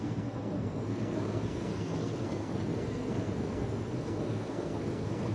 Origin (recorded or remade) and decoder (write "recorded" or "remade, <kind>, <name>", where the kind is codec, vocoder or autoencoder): remade, codec, SNAC